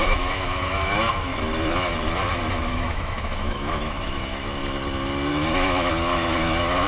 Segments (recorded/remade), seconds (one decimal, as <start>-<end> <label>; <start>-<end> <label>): 0.0-1.3 remade; 1.3-2.5 recorded; 2.5-4.6 remade; 4.6-5.3 recorded; 5.3-6.9 remade